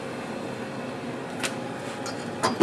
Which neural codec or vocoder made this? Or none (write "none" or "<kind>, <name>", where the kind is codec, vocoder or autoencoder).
none